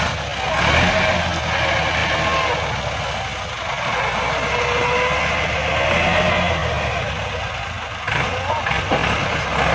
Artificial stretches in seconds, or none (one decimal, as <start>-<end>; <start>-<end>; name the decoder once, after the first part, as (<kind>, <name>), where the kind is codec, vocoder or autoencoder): none